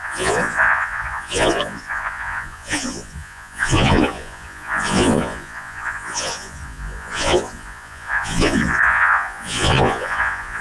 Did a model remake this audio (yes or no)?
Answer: yes